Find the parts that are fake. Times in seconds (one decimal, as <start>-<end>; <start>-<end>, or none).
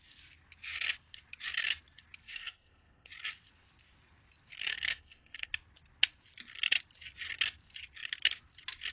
2.2-3.1; 4.7-5.5